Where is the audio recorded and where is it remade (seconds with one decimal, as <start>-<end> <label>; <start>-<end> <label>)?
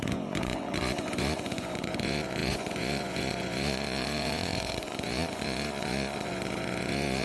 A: 0.0-7.2 remade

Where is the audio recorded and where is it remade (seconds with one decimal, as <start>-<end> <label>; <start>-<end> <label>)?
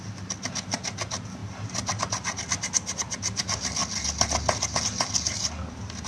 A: 0.0-6.1 recorded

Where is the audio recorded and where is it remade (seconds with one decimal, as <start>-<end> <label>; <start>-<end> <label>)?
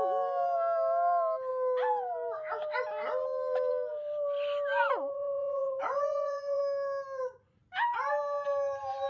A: 0.0-4.7 recorded; 4.7-6.6 remade; 6.6-9.1 recorded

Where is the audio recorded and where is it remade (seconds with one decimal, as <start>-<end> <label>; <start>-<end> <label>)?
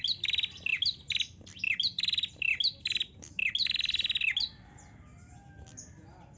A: 0.0-6.4 recorded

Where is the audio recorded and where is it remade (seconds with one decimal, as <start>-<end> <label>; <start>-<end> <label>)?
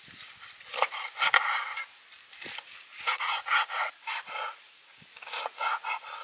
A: 0.0-2.9 recorded; 2.9-4.9 remade; 4.9-6.2 recorded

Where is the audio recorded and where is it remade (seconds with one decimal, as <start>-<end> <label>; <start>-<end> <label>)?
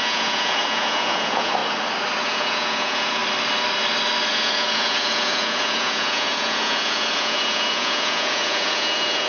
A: 0.0-1.6 remade; 1.6-2.2 recorded; 2.2-3.2 remade; 3.2-4.3 recorded; 4.3-9.3 remade